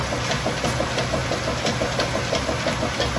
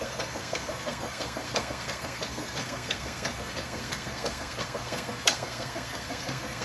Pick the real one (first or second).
first